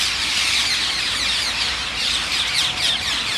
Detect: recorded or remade recorded